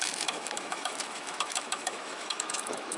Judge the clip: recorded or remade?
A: remade